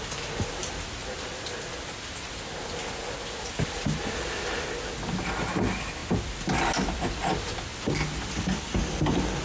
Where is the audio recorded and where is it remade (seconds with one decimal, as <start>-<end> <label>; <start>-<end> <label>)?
0.0-9.4 recorded